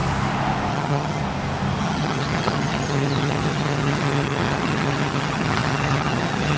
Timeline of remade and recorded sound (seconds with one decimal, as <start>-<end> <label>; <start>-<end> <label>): 0.0-0.7 recorded; 0.7-1.2 remade; 1.2-1.8 recorded; 1.8-6.6 remade